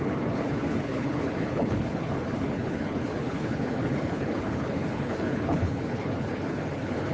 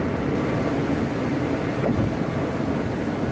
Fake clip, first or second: first